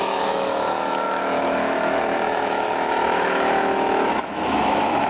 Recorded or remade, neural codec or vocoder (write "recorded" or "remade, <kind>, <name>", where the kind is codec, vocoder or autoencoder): remade, autoencoder, DAC-VAE